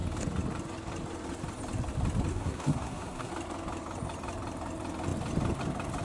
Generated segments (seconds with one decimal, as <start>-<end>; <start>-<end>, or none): 2.3-3.3